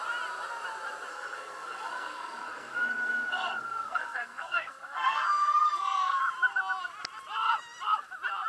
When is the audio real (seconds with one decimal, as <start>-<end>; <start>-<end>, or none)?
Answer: 0.0-1.1; 6.2-8.5